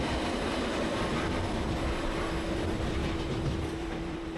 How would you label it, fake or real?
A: fake